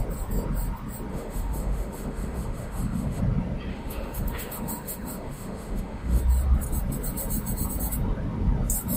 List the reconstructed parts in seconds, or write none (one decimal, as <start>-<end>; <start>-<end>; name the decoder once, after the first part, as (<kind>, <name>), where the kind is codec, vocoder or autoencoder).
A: 1.1-3.2 (autoencoder, DAC-VAE); 3.7-6.2